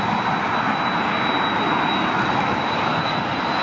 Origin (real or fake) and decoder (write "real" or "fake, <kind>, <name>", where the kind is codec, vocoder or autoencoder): real